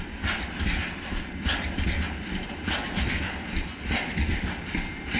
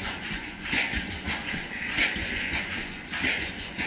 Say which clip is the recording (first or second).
first